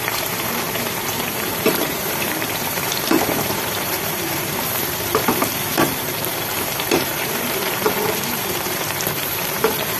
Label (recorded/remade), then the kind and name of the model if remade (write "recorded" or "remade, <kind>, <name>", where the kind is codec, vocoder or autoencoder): remade, vocoder, BigVGAN v2